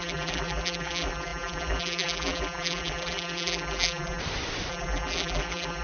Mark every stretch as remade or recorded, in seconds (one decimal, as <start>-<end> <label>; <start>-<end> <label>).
0.0-4.2 remade; 4.2-4.7 recorded; 4.7-5.8 remade